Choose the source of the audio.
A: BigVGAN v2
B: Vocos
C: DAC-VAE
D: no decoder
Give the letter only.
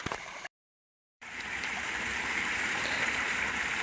A